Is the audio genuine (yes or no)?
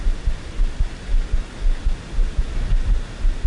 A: yes